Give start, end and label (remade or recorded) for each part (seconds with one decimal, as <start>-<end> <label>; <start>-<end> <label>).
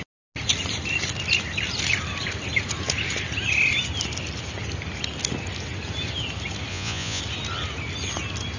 0.0-6.7 recorded; 6.7-7.2 remade; 7.2-8.6 recorded